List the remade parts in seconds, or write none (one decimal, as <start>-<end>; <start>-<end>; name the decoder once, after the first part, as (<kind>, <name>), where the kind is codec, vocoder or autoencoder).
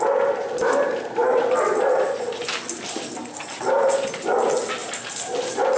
none